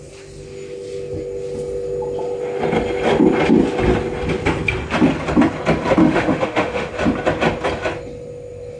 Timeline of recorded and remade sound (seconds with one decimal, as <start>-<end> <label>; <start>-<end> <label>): 0.0-6.0 recorded; 6.0-6.9 remade; 6.9-8.8 recorded

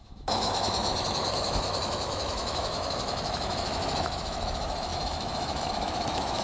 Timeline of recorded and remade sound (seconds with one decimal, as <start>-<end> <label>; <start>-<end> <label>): 0.0-6.4 remade

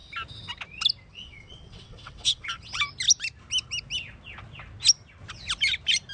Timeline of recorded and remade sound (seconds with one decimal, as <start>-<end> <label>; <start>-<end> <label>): 0.0-1.1 recorded; 1.1-2.8 remade; 2.8-6.1 recorded